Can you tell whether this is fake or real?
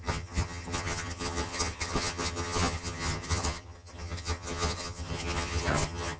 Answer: fake